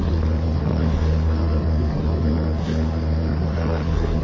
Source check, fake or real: fake